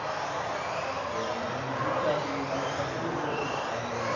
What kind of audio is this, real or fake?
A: real